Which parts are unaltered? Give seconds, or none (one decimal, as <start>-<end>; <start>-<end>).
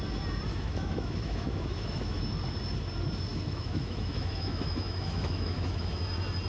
0.0-0.5; 2.2-3.3; 6.0-6.5